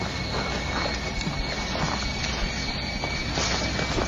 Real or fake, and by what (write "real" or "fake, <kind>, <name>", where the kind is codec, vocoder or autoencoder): real